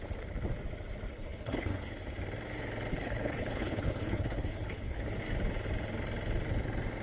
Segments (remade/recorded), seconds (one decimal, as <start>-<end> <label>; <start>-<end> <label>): 0.0-1.1 recorded; 1.1-1.9 remade; 1.9-2.9 recorded; 2.9-5.2 remade; 5.2-7.0 recorded